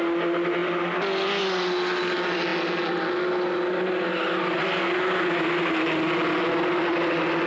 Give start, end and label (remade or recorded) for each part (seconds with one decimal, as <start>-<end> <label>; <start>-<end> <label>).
0.0-7.5 recorded